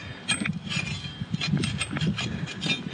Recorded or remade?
recorded